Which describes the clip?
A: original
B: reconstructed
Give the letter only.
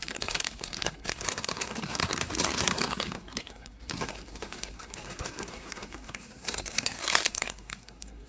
B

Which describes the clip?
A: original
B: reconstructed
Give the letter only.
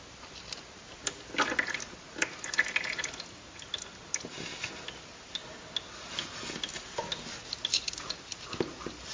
A